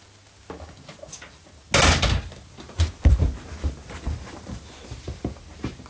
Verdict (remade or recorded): recorded